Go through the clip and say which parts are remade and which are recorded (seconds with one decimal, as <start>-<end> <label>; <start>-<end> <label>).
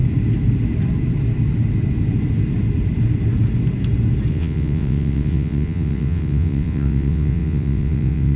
0.0-4.3 recorded; 4.3-8.4 remade